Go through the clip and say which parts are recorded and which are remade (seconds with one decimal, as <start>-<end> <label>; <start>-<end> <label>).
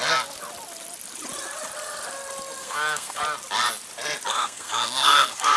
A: 0.0-2.6 recorded; 2.6-3.2 remade; 3.2-4.3 recorded; 4.3-5.6 remade